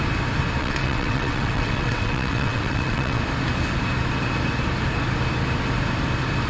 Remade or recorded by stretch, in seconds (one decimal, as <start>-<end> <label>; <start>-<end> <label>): 0.0-0.6 recorded; 0.6-3.2 remade; 3.2-6.5 recorded